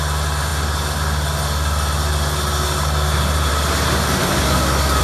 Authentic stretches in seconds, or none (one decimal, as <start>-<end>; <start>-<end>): 0.0-4.2